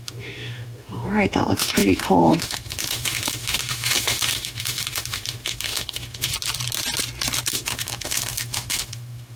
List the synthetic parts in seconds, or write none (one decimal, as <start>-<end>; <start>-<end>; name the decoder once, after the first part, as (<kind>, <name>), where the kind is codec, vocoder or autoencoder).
0.0-6.3 (autoencoder, DAC-VAE); 7.5-9.4